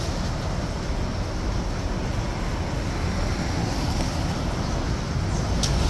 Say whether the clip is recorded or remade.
recorded